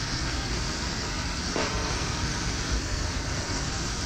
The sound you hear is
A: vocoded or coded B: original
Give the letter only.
A